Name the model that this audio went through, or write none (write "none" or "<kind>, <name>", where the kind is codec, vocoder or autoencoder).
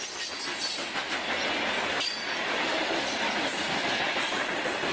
none